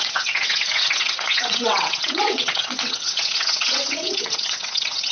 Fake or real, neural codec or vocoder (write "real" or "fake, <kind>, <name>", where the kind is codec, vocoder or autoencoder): fake, vocoder, WaveNeXt